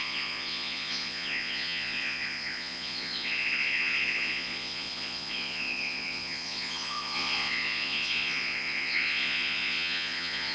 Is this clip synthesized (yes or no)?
yes